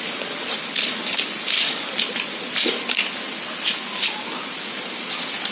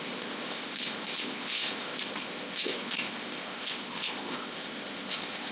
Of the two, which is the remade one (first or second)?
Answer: second